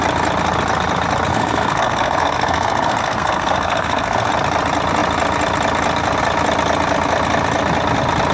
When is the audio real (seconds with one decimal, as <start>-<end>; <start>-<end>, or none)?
0.0-1.3; 4.3-8.3